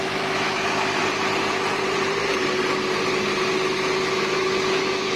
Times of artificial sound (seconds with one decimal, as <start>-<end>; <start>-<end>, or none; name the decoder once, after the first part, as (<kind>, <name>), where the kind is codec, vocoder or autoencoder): 0.0-1.0 (autoencoder, DAC-VAE); 4.1-5.2